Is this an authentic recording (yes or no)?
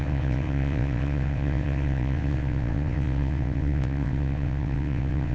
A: no